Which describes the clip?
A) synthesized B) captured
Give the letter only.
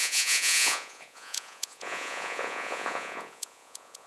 A